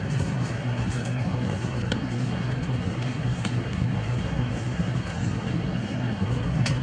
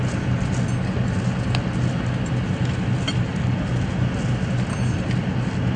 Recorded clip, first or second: second